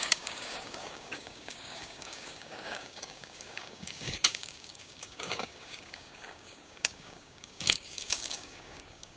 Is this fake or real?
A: fake